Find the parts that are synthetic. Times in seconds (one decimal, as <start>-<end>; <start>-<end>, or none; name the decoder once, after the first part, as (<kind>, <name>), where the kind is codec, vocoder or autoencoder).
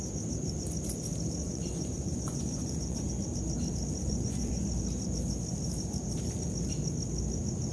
1.4-3.1 (vocoder, Vocos); 4.1-4.7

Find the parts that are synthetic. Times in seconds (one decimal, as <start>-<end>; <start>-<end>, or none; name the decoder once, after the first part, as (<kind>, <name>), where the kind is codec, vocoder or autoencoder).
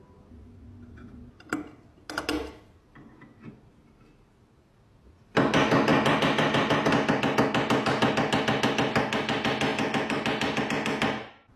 none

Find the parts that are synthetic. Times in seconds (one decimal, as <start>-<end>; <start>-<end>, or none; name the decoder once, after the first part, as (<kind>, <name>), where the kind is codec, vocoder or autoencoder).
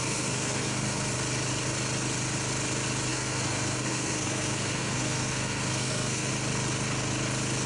0.0-1.1 (codec, SNAC); 3.1-6.3